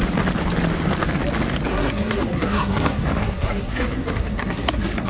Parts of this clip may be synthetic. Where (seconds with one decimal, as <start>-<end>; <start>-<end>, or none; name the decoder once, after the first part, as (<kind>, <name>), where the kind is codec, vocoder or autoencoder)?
1.7-5.1 (codec, SNAC)